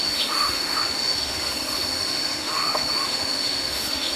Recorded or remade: remade